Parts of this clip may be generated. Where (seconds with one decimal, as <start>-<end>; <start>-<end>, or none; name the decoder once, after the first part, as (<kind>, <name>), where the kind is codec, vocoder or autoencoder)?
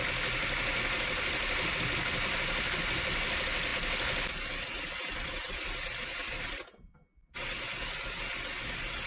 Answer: none